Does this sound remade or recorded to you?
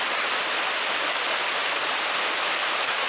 recorded